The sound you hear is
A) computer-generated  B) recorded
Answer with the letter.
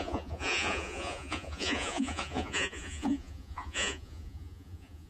A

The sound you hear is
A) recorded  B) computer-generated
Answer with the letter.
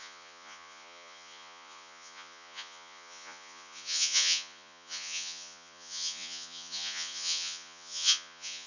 B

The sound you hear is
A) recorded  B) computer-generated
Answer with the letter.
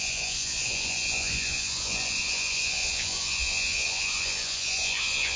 B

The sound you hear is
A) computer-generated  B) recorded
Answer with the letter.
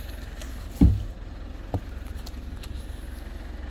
B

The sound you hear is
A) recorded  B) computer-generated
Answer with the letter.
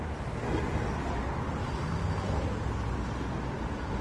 A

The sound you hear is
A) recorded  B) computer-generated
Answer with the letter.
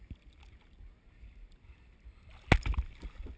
A